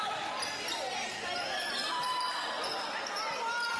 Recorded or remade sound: recorded